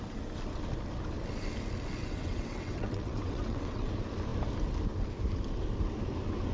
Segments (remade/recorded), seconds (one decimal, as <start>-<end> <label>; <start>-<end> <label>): 0.0-2.0 recorded; 2.0-3.9 remade; 3.9-6.5 recorded